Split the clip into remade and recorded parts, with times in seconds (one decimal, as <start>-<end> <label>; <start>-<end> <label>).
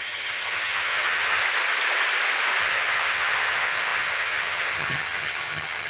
0.0-1.4 remade; 1.4-2.6 recorded; 2.6-5.9 remade